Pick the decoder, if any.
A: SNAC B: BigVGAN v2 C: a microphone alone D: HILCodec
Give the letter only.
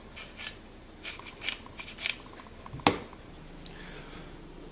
C